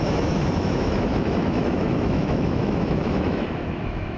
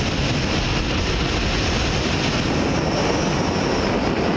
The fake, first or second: first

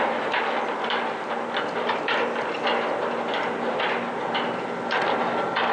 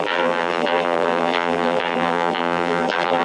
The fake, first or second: second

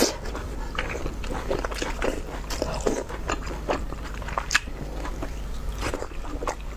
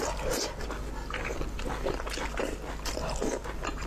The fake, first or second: first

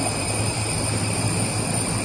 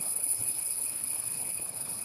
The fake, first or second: second